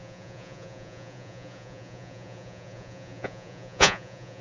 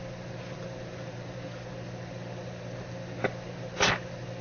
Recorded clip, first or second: second